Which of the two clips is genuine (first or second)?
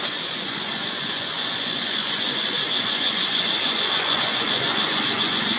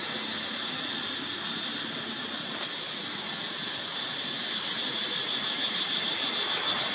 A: second